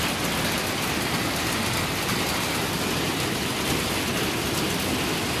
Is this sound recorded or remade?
recorded